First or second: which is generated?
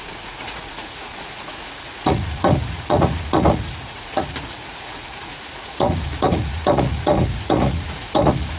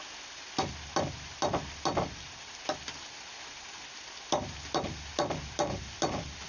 first